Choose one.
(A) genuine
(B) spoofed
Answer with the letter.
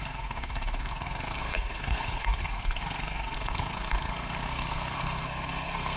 B